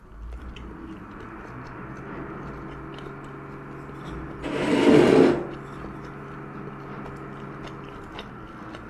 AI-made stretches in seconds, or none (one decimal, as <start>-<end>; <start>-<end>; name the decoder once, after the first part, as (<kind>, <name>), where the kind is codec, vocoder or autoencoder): none